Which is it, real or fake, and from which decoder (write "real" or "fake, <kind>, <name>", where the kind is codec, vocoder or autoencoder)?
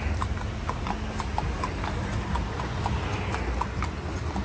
real